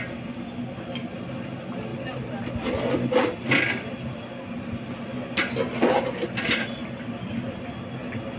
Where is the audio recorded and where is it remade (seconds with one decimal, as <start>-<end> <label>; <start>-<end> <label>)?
0.0-8.4 recorded